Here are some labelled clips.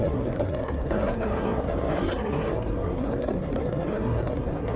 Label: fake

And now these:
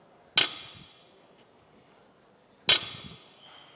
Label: real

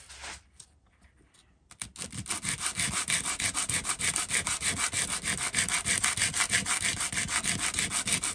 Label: real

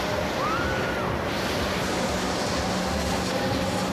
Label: real